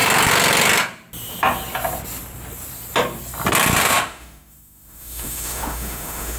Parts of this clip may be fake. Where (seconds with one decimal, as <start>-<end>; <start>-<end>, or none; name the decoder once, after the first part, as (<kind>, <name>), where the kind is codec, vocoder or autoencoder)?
3.8-6.4 (autoencoder, DAC-VAE)